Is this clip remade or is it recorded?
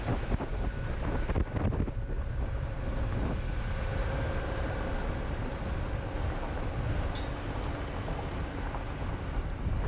recorded